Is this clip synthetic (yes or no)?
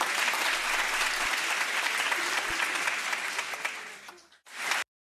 no